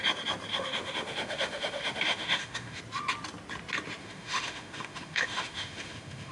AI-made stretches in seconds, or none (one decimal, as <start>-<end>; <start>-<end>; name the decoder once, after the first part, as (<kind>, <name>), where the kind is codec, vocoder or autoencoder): 0.5-2.8 (autoencoder, DAC-VAE); 4.0-6.3